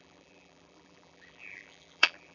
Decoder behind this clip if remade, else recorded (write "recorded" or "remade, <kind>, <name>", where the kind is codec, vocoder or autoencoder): remade, vocoder, BigVGAN v2